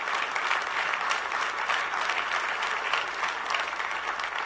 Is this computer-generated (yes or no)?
no